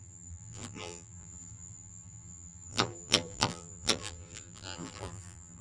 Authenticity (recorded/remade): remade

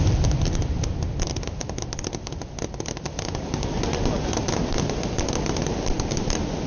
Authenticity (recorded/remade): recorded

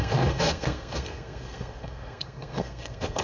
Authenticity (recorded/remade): remade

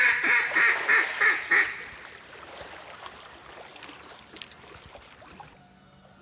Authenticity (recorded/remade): recorded